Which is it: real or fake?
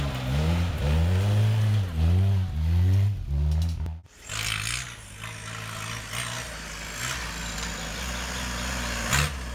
real